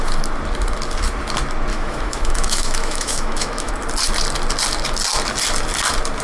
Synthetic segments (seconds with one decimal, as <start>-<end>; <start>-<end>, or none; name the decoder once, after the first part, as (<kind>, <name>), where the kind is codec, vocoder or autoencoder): 1.7-3.7 (autoencoder, DAC-VAE)